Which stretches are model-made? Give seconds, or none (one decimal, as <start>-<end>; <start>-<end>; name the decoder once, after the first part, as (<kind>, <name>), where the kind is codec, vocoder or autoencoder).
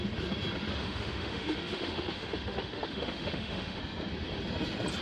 0.8-3.8 (autoencoder, DAC-VAE)